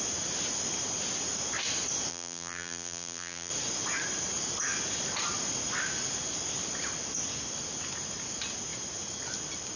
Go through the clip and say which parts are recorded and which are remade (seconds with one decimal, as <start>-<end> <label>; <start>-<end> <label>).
0.0-2.1 recorded; 2.1-3.5 remade; 3.5-9.8 recorded